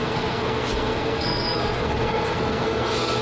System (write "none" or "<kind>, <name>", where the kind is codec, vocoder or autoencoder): codec, SNAC